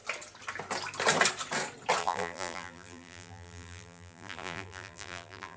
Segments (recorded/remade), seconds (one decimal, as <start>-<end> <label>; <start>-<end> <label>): 0.0-2.0 recorded; 2.0-5.6 remade